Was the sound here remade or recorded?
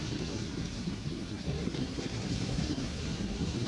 remade